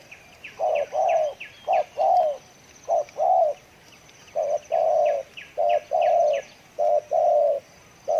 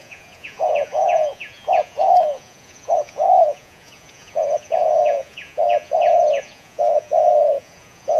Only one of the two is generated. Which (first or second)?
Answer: second